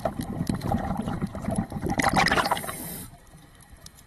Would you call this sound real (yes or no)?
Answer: no